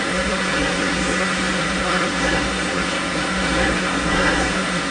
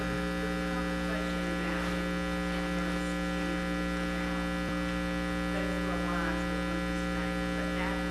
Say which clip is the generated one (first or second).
first